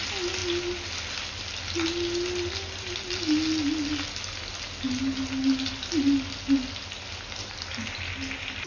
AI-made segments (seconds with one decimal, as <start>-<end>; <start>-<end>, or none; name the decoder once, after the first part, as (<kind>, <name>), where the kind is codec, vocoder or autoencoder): none